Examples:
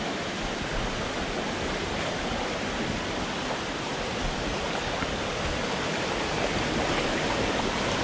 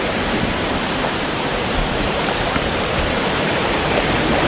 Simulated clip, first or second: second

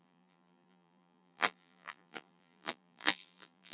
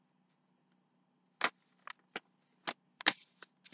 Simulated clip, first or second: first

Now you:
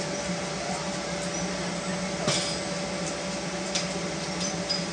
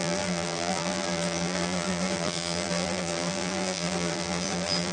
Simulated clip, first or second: second